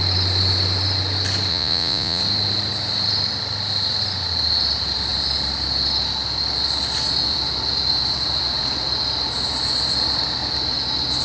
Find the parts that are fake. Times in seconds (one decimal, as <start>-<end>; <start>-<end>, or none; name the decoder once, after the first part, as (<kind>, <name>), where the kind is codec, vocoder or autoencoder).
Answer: 1.5-2.2 (vocoder, Vocos)